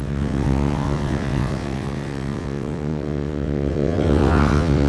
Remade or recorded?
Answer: remade